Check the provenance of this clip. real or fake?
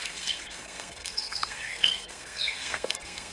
fake